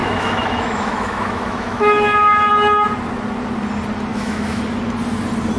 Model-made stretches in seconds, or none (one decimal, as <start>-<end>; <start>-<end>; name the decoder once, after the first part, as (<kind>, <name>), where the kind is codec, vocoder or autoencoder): 0.0-2.5 (autoencoder, DAC-VAE); 4.1-4.6